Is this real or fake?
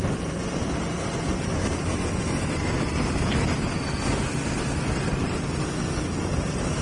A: real